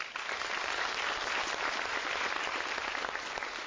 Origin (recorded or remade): recorded